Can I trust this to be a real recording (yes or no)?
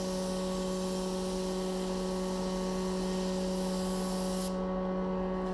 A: yes